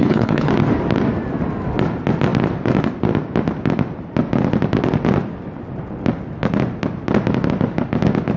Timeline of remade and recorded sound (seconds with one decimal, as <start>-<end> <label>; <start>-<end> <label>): 0.0-0.5 remade; 0.5-8.4 recorded